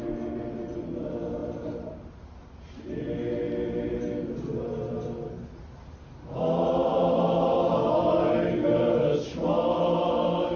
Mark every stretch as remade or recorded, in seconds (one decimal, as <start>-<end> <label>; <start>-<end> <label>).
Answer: 0.0-1.4 recorded; 1.4-2.1 remade; 2.1-6.9 recorded; 6.9-7.9 remade; 7.9-10.6 recorded